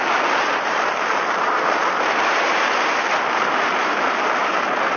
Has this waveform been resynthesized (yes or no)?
yes